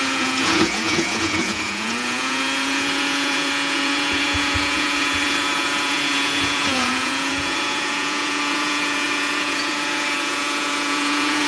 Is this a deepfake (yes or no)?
yes